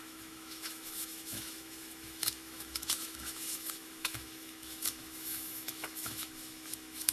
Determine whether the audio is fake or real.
fake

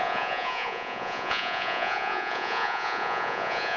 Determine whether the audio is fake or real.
fake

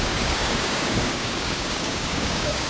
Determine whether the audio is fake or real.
fake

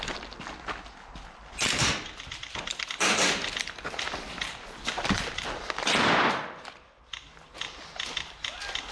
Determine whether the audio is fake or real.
real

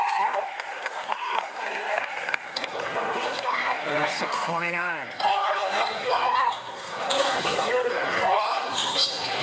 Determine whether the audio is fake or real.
fake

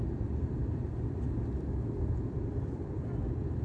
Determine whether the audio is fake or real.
fake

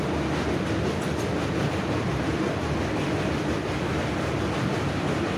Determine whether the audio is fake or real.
real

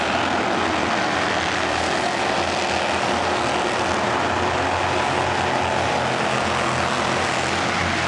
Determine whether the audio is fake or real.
real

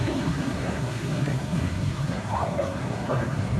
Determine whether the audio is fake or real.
fake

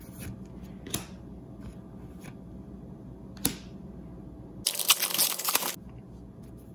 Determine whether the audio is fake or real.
real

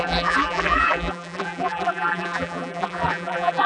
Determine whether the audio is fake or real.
fake